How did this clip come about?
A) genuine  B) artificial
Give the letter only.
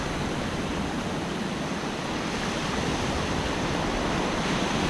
A